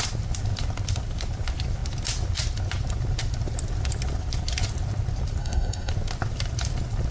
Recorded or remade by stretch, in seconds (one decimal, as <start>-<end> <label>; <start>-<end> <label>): 0.0-5.4 recorded; 5.4-5.9 remade; 5.9-7.1 recorded